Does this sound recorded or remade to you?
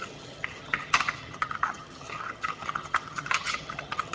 remade